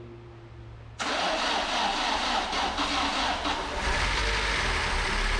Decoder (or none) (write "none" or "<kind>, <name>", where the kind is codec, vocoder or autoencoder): none